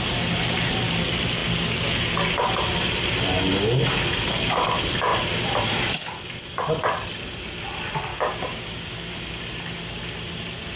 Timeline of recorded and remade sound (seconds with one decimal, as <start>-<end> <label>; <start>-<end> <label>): 0.0-8.1 recorded; 8.1-9.1 remade; 9.1-10.8 recorded